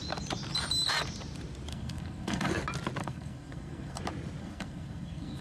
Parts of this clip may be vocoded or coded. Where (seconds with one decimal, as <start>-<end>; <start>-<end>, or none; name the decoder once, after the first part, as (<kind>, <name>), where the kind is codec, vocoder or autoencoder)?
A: 1.7-2.5 (codec, SNAC); 3.0-4.0; 4.4-5.4